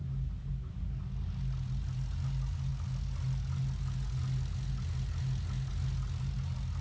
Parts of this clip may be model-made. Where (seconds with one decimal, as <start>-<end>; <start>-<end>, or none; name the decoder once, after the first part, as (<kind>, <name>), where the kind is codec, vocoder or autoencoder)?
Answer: none